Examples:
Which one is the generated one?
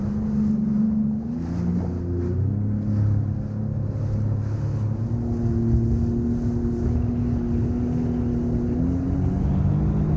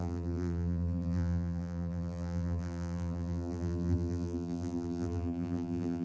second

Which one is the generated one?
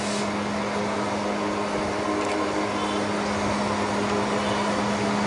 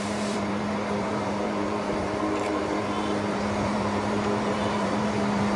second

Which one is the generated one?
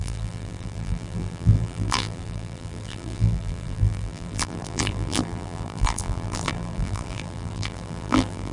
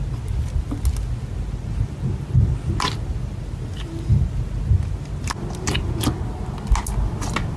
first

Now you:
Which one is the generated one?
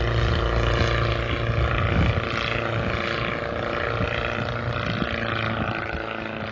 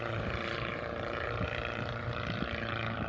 second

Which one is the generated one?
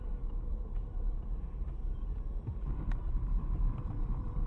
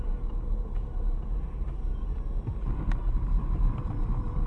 first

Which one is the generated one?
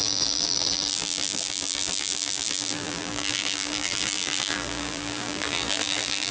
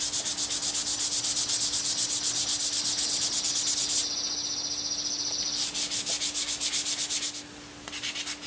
first